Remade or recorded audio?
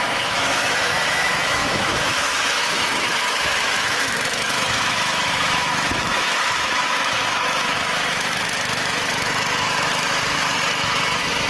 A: remade